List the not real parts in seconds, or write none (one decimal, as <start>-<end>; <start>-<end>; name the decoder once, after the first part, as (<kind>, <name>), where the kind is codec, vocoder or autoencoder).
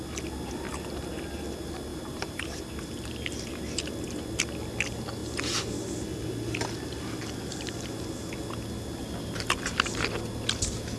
1.9-2.6 (vocoder, BigVGAN v2)